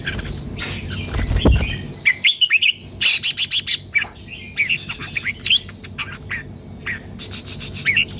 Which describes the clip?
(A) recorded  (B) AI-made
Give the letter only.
A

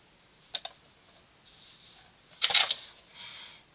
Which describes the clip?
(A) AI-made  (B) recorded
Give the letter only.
B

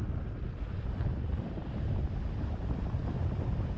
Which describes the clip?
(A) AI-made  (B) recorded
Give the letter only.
B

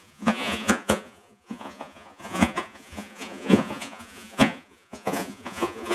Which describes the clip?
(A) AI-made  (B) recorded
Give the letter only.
A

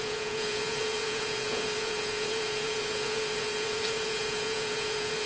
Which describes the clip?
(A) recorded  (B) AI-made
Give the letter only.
B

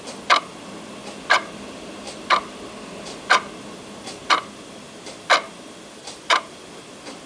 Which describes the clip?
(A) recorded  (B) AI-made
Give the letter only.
A